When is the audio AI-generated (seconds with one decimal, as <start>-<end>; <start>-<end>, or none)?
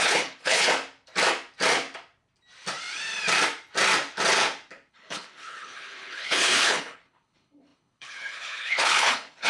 0.0-0.7; 4.9-9.5